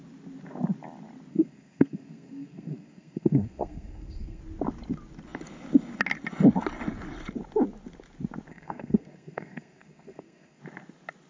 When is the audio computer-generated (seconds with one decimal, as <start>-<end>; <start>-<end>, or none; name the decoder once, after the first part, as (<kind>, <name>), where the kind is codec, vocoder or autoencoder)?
1.3-4.4 (codec, SNAC); 8.5-10.6